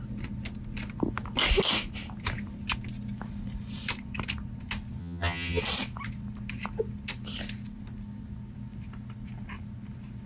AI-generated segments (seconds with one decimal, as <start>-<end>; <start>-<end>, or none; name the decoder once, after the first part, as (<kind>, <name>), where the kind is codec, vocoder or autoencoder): 5.0-5.6 (vocoder, HiFi-GAN)